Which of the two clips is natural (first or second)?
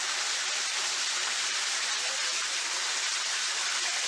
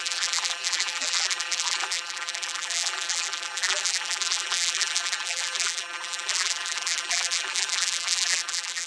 first